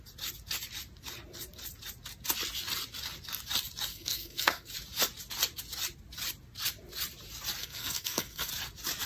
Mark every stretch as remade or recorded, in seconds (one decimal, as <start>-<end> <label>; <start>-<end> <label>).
0.0-3.9 recorded; 3.9-4.7 remade; 4.7-7.6 recorded; 7.6-8.5 remade; 8.5-9.1 recorded

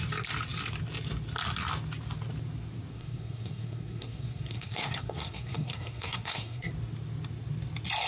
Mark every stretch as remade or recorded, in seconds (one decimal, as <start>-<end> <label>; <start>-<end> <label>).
0.0-2.9 recorded; 2.9-6.7 remade; 6.7-8.1 recorded